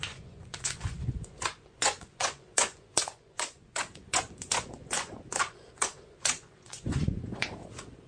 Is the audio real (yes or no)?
no